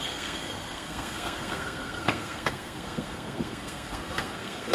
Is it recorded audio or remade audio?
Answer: remade